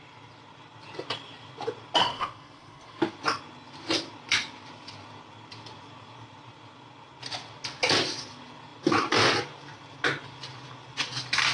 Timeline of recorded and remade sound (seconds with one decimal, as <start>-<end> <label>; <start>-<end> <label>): 0.0-2.0 recorded; 2.0-3.0 remade; 3.0-11.5 recorded